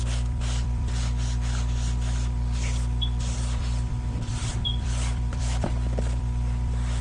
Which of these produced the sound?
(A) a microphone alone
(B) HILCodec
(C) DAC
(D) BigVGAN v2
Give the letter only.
D